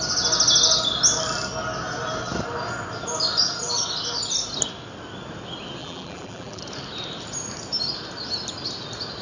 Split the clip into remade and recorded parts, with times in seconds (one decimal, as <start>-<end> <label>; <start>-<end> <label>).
0.0-5.8 recorded; 5.8-6.6 remade; 6.6-9.2 recorded